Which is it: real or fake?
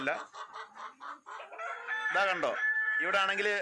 real